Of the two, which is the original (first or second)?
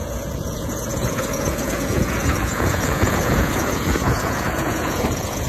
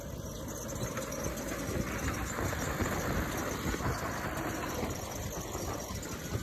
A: second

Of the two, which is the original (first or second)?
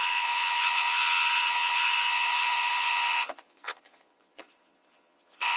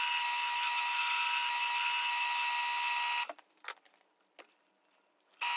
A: second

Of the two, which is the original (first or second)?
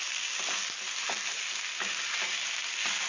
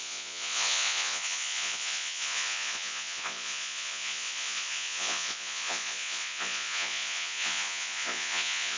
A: first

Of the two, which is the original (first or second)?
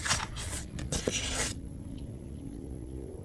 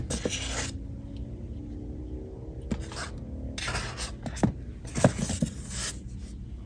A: second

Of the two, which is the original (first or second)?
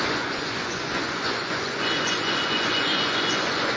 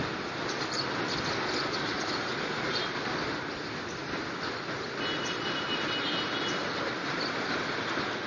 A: second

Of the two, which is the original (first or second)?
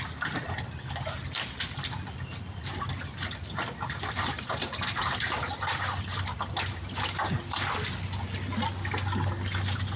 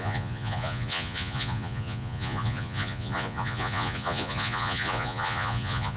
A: first